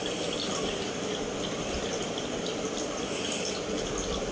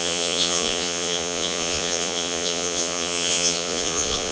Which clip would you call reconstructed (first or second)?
second